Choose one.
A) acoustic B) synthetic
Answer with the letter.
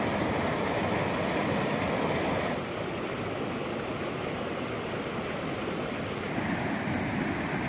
A